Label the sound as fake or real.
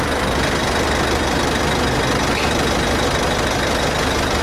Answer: real